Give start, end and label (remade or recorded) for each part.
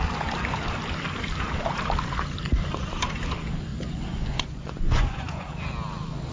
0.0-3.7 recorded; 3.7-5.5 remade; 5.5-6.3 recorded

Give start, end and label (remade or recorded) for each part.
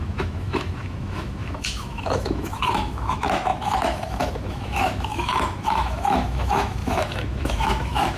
0.0-8.2 remade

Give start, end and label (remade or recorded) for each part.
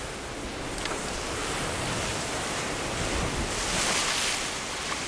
0.0-1.4 recorded; 1.4-4.5 remade; 4.5-5.1 recorded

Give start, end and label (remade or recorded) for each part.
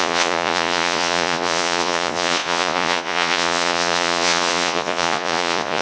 0.0-5.8 remade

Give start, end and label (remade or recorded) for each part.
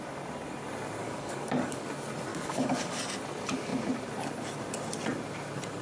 0.0-1.0 recorded; 1.0-1.8 remade; 1.8-2.3 recorded; 2.3-3.0 remade; 3.0-5.8 recorded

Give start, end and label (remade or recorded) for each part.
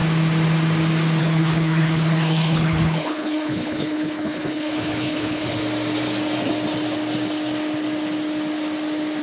0.0-1.2 recorded; 1.2-5.6 remade; 5.6-9.2 recorded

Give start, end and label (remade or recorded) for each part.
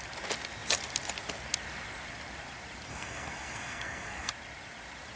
0.0-2.9 recorded; 2.9-4.3 remade; 4.3-5.2 recorded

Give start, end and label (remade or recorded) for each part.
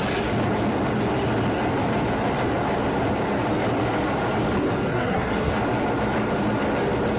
0.0-4.9 recorded; 4.9-5.5 remade; 5.5-7.2 recorded